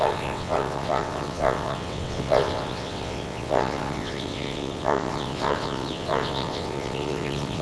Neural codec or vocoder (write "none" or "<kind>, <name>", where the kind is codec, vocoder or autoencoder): vocoder, WaveNeXt